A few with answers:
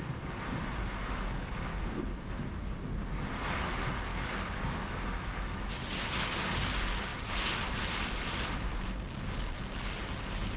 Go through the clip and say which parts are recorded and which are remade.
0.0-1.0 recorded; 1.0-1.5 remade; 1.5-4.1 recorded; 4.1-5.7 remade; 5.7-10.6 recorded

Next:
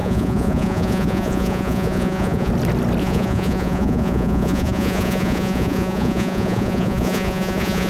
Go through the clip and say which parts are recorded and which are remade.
0.0-2.5 remade; 2.5-3.0 recorded; 3.0-7.9 remade

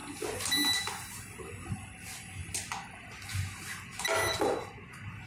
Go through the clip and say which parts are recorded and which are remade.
0.0-5.3 recorded

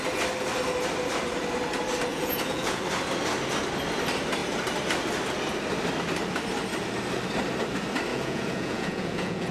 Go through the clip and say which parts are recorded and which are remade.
0.0-2.1 recorded; 2.1-2.8 remade; 2.8-8.1 recorded; 8.1-9.5 remade